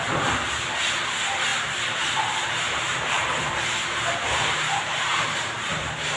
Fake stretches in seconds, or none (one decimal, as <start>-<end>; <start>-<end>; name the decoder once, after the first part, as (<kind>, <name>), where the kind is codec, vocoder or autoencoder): 1.5-5.2 (vocoder, BigVGAN v2)

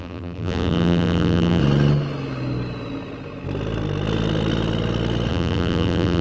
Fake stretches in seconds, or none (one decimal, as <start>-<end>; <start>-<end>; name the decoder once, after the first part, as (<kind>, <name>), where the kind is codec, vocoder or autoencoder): 0.0-1.6 (vocoder, BigVGAN v2); 5.3-6.2

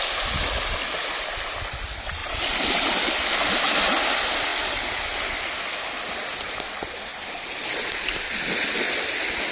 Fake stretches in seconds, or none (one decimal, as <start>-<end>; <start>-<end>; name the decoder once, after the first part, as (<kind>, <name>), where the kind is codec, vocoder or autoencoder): 2.2-3.1 (vocoder, BigVGAN v2); 4.5-5.6; 7.1-8.4

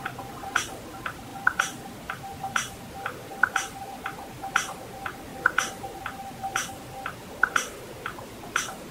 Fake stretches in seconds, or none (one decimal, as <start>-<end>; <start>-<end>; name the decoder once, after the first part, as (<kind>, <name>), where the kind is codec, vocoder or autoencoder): 1.3-2.3 (vocoder, BigVGAN v2); 5.3-6.0

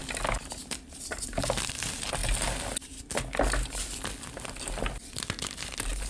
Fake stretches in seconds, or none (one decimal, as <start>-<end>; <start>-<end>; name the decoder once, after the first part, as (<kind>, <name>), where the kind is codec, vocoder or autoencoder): 0.0-1.2 (vocoder, BigVGAN v2)